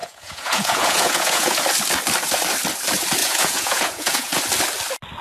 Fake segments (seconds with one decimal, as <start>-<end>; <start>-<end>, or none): 0.0-1.6; 3.2-4.4